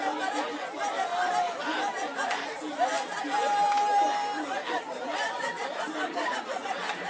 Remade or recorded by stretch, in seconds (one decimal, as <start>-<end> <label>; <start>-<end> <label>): 0.0-7.1 recorded